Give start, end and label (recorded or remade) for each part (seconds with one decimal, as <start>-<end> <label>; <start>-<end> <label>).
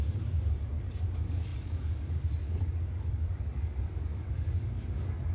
0.0-5.3 remade